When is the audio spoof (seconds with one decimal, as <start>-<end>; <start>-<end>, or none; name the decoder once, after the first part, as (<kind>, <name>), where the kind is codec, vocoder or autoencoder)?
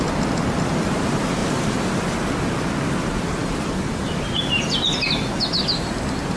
none